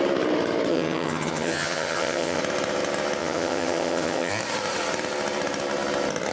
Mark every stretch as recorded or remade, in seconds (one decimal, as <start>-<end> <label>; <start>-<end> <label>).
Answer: 0.0-0.7 recorded; 0.7-2.4 remade; 2.4-3.2 recorded; 3.2-4.3 remade; 4.3-6.3 recorded